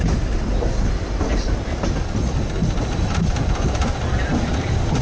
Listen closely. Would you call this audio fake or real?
fake